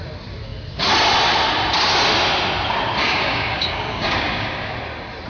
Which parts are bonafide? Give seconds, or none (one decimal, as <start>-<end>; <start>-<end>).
0.0-3.0; 4.7-5.3